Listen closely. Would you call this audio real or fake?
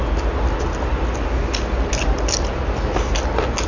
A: real